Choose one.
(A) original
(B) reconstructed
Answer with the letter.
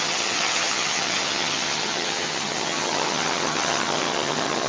B